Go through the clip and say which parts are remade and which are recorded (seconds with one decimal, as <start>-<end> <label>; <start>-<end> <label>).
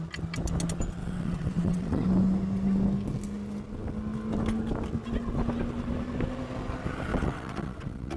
0.0-1.0 recorded; 1.0-2.0 remade; 2.0-7.1 recorded; 7.1-8.2 remade